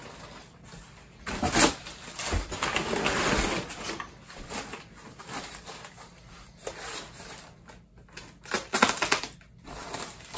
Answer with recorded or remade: recorded